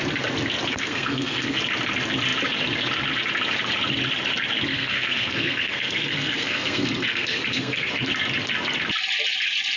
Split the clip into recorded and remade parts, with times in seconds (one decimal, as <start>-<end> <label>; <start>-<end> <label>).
0.0-0.7 recorded; 0.7-1.6 remade; 1.6-4.7 recorded; 4.7-7.9 remade; 7.9-9.8 recorded